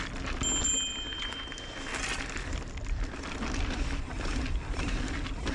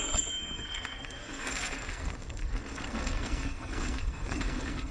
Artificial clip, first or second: second